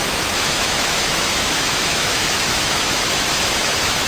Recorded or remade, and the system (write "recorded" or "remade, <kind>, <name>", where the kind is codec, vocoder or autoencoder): remade, autoencoder, DAC-VAE